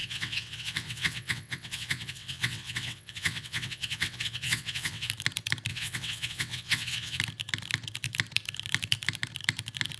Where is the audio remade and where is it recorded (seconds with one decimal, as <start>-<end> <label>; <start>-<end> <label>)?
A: 0.0-5.1 remade; 5.1-5.7 recorded; 5.7-7.2 remade; 7.2-10.0 recorded